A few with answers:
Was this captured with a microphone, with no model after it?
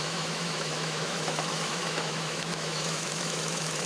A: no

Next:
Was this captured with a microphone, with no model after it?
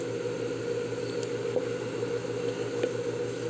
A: yes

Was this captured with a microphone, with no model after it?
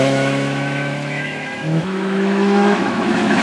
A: no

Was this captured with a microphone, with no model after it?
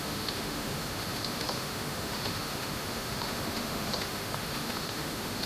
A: no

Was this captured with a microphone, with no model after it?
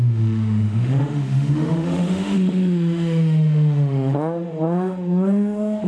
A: no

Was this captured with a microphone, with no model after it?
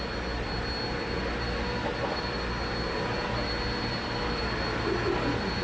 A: yes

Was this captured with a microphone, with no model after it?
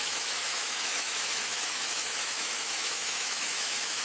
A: no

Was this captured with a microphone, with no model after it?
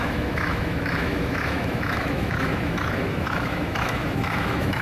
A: no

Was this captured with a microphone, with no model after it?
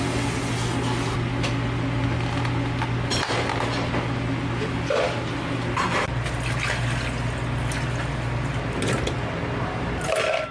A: yes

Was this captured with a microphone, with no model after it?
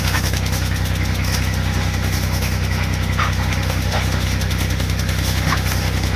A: no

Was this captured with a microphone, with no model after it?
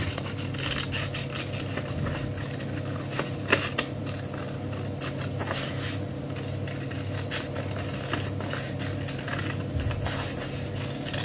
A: yes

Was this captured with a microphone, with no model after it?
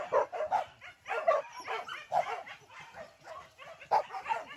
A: yes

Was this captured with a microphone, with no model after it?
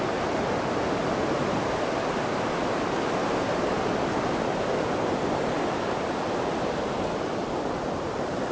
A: yes